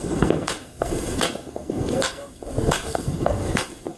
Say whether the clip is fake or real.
fake